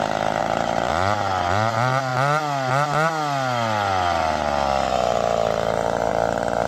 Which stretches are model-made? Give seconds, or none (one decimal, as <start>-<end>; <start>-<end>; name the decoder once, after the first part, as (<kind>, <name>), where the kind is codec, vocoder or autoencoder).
0.4-0.9 (vocoder, BigVGAN v2)